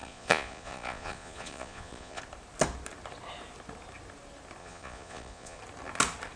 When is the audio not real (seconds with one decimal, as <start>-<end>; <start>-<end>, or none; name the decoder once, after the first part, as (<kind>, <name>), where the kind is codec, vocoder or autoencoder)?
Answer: 0.0-2.2 (vocoder, Vocos); 4.6-5.6